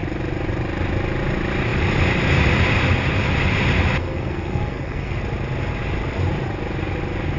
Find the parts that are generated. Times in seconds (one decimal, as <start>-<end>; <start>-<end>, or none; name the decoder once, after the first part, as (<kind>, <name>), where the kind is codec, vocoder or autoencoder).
4.0-5.2 (codec, SNAC)